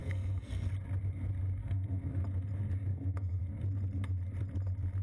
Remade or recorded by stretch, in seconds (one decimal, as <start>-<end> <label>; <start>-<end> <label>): 0.0-0.7 remade; 0.7-1.6 recorded; 1.6-2.2 remade; 2.2-2.9 recorded; 2.9-3.4 remade; 3.4-5.0 recorded